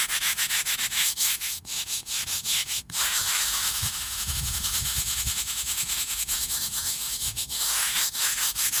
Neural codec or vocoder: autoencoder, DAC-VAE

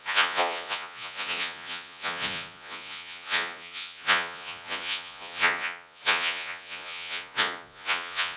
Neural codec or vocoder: vocoder, Vocos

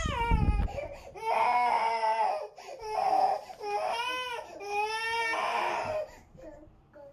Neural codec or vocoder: none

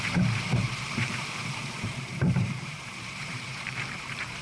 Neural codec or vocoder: vocoder, BigVGAN v2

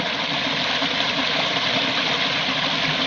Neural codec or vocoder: none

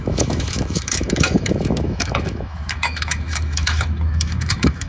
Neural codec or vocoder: autoencoder, DAC-VAE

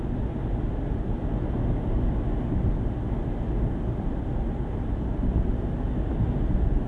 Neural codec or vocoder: none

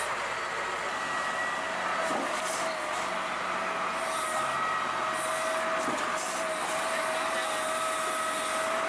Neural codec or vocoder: none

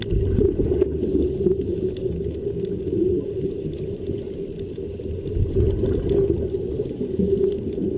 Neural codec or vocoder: none